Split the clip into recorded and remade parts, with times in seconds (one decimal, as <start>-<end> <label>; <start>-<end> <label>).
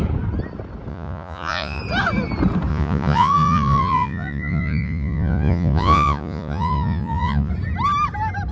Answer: 0.0-0.9 recorded; 0.9-1.8 remade; 1.8-2.7 recorded; 2.7-7.5 remade; 7.5-8.5 recorded